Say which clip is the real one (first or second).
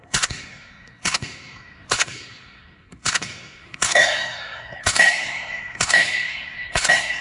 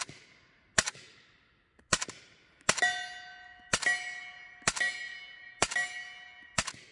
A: second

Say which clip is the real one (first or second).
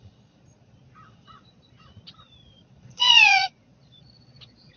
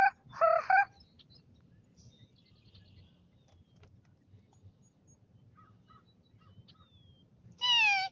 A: second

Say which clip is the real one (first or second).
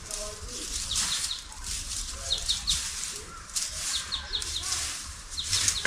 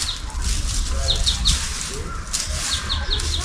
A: second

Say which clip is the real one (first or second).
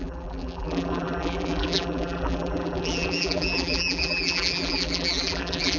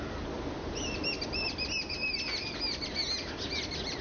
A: second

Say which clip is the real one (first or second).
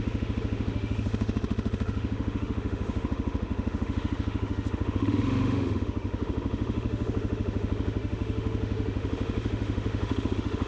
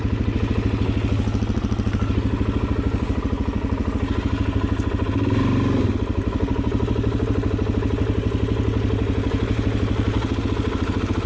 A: second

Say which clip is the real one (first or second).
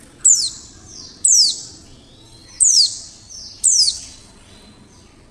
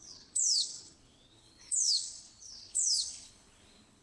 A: first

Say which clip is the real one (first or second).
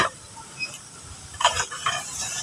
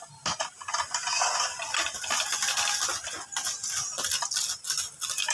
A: second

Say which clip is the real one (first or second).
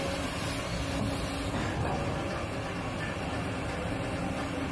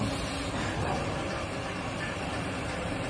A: first